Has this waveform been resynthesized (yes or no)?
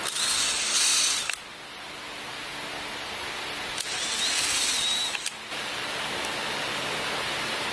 no